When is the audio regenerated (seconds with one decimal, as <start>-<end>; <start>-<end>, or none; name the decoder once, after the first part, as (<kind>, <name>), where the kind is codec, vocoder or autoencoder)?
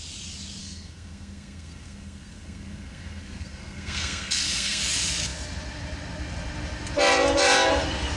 0.6-4.8 (codec, SNAC)